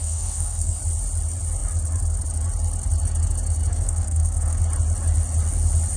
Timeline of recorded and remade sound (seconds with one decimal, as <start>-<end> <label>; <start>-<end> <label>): 0.0-0.8 remade; 0.8-3.7 recorded; 3.7-4.6 remade; 4.6-6.0 recorded